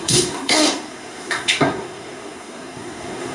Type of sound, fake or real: fake